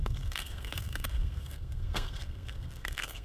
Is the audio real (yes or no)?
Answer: no